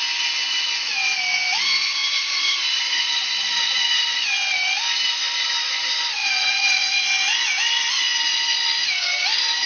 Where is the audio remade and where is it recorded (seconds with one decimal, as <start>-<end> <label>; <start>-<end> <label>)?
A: 0.0-2.0 recorded; 2.0-4.2 remade; 4.2-6.2 recorded; 6.2-7.1 remade; 7.1-9.7 recorded